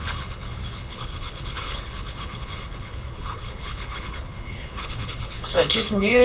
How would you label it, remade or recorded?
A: remade